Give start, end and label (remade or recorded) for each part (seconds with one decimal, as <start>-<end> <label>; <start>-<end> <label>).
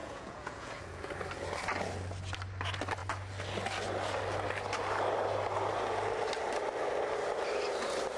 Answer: 0.0-1.1 remade; 1.1-8.2 recorded